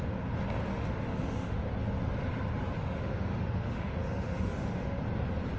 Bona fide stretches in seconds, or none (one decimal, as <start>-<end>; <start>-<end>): 0.0-0.7; 1.7-2.8; 5.0-5.6